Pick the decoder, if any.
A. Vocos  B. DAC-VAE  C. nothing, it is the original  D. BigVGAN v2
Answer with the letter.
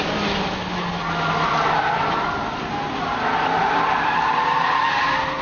C